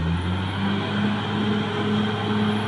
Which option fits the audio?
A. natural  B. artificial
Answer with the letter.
A